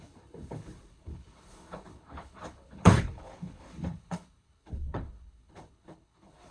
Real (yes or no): no